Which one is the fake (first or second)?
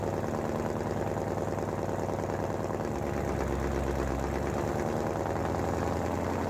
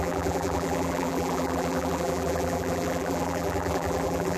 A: second